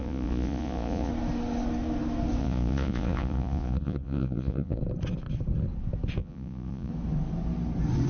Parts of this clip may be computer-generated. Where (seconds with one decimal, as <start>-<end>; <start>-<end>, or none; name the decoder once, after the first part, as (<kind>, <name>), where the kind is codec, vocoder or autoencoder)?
0.0-1.1 (vocoder, Vocos); 2.4-4.8; 6.2-6.9